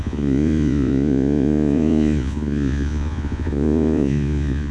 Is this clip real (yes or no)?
no